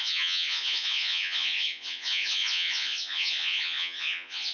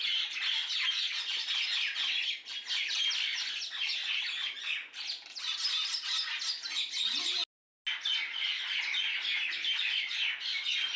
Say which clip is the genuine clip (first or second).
second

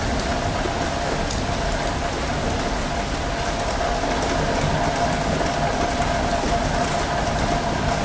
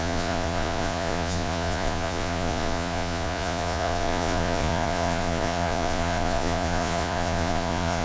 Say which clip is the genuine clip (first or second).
first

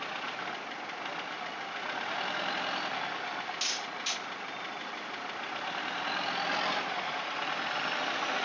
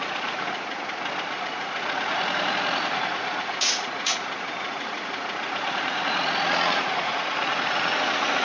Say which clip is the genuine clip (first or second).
first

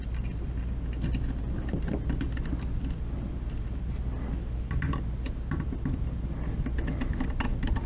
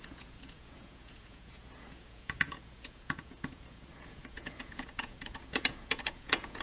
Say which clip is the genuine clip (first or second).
first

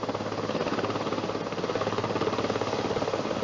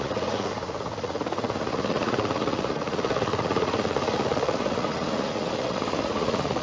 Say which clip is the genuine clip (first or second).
first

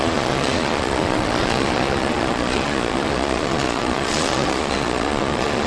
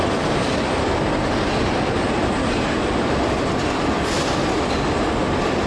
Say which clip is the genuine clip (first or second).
second